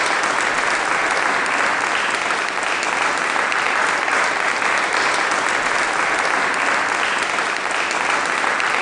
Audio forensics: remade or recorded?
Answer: recorded